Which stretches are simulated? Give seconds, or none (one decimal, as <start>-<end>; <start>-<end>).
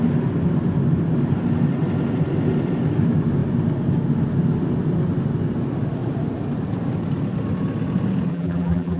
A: 8.3-9.0